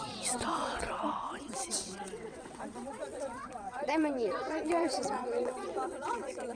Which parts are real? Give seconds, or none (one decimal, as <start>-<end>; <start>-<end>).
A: none